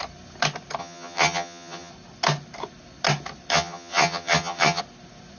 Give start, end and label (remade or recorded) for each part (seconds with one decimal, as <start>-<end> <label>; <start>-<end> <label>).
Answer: 0.0-0.8 recorded; 0.8-1.9 remade; 1.9-3.5 recorded; 3.5-4.8 remade; 4.8-5.4 recorded